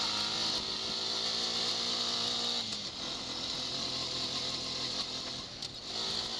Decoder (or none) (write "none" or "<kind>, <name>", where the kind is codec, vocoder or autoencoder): none